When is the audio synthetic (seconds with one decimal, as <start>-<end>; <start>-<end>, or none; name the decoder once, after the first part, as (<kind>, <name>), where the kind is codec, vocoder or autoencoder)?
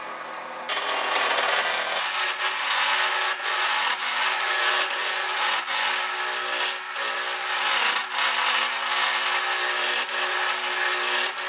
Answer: 2.1-5.9 (vocoder, Vocos)